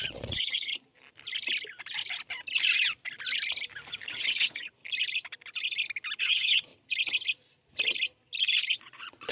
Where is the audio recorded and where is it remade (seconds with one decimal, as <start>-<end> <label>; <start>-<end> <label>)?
0.0-0.7 remade; 0.7-4.1 recorded; 4.1-4.8 remade; 4.8-6.2 recorded; 6.2-6.7 remade; 6.7-8.8 recorded; 8.8-9.3 remade